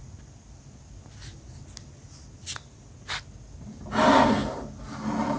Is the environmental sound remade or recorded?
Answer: recorded